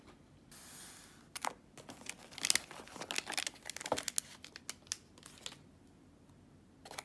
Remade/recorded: recorded